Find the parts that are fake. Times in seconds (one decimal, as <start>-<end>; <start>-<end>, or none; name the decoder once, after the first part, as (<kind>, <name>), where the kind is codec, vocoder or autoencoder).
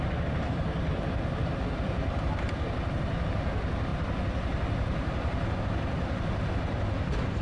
none